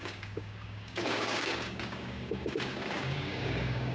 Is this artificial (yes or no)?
yes